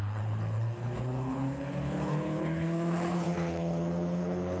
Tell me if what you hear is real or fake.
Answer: fake